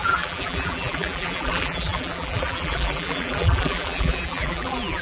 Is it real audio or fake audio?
fake